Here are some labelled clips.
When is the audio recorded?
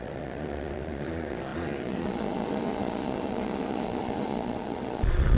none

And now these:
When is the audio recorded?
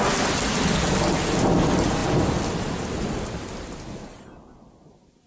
0.0-5.3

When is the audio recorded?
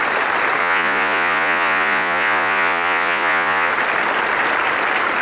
0.0-0.6; 3.7-5.2